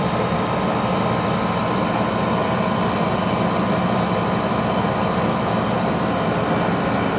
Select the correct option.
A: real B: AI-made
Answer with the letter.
A